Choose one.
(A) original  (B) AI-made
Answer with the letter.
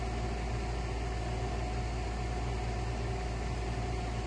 A